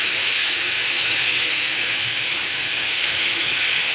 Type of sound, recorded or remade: remade